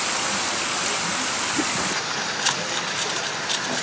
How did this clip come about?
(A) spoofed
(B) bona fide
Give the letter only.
B